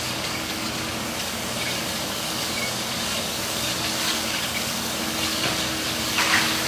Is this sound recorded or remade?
remade